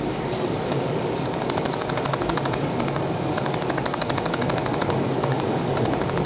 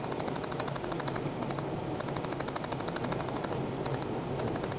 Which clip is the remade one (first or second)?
first